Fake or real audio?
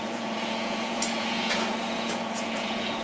fake